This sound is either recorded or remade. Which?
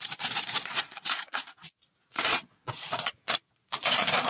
remade